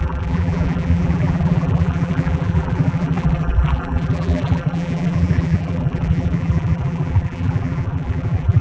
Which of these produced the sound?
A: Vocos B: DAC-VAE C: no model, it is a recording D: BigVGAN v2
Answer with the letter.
D